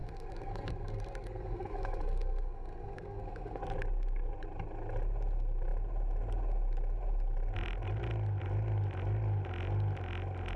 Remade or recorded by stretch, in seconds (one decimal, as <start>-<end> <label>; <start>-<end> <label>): 0.0-3.6 remade; 3.6-10.6 recorded